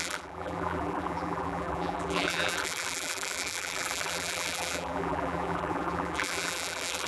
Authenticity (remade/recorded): remade